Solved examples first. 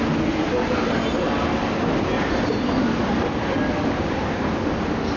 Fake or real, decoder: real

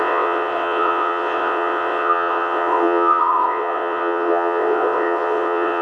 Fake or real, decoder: fake, vocoder, WaveNeXt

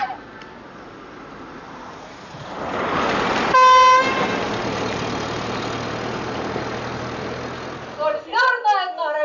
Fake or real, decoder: real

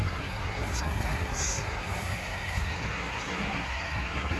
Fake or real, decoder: fake, codec, SNAC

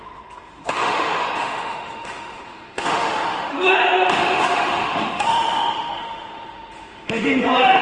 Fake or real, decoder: fake, autoencoder, DAC-VAE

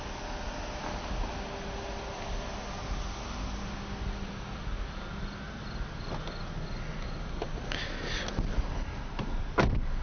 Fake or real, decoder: real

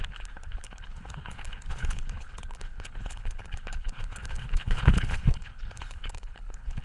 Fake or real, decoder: fake, codec, HILCodec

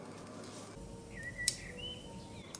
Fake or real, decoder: real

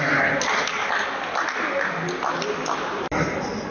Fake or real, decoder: real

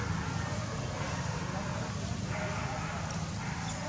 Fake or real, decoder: real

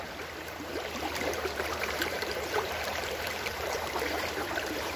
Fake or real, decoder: fake, vocoder, BigVGAN v2